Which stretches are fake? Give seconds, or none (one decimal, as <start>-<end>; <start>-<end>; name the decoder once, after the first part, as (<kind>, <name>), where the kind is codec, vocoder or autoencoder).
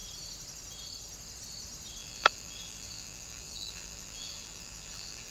2.0-5.3 (vocoder, BigVGAN v2)